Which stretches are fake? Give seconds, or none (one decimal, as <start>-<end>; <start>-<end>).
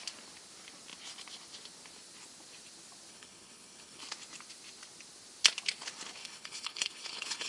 3.1-4.0; 6.2-7.5